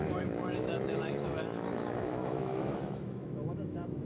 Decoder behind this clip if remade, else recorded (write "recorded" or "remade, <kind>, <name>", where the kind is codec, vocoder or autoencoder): remade, autoencoder, DAC-VAE